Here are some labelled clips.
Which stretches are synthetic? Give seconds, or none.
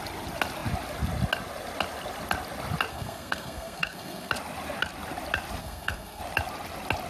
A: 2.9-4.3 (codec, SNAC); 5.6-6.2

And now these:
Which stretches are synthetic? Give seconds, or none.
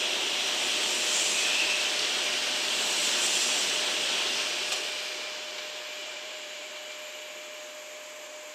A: 3.0-3.6 (vocoder, BigVGAN v2); 6.0-6.7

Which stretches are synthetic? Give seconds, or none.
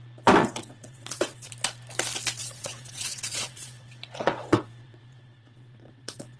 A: 0.4-1.5 (vocoder, WaveNeXt); 2.4-6.4